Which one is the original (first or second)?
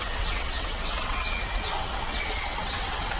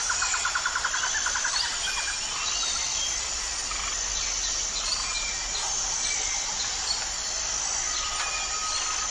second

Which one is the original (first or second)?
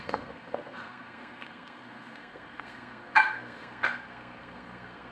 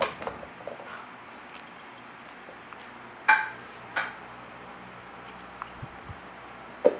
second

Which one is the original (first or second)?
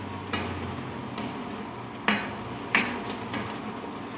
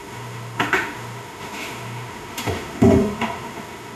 first